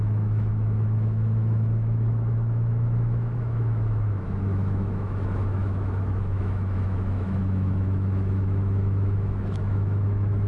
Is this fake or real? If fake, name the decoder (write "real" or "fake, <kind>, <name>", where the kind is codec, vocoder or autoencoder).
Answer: fake, autoencoder, DAC-VAE